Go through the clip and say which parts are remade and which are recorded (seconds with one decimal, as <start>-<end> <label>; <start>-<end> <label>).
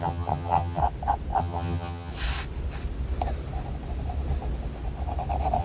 0.0-0.8 remade; 0.8-1.4 recorded; 1.4-2.1 remade; 2.1-5.6 recorded